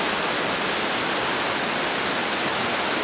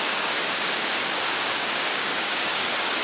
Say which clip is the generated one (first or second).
second